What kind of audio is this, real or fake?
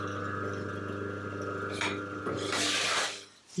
real